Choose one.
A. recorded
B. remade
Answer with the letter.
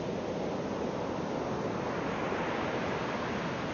A